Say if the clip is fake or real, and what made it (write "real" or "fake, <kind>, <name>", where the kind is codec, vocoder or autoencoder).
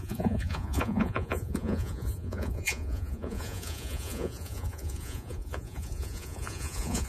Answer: fake, vocoder, Vocos